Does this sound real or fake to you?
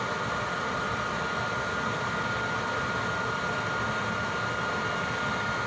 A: real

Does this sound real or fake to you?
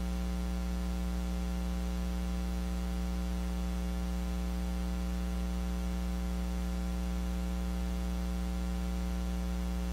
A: real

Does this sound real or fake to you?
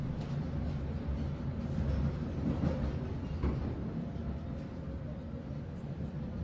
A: real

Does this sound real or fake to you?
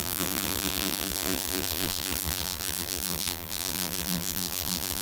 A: fake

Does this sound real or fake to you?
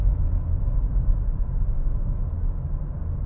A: real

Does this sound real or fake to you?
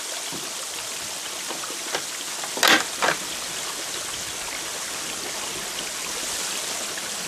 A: real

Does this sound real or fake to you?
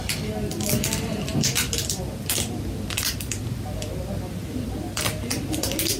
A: real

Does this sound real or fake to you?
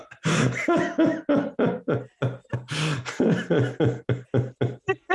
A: real